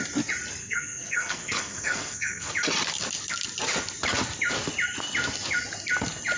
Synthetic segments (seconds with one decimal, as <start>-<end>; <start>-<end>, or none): 0.6-2.5